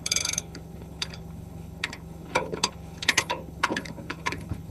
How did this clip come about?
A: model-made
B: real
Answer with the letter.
A